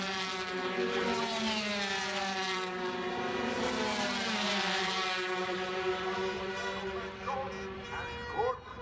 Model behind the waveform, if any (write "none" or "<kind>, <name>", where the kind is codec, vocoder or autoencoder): vocoder, BigVGAN v2